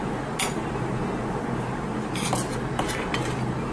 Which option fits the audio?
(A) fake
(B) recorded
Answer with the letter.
B